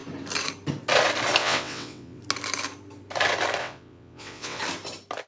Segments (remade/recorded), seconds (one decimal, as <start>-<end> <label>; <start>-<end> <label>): 0.0-1.4 recorded; 1.4-2.2 remade; 2.2-3.6 recorded; 3.6-4.6 remade; 4.6-5.3 recorded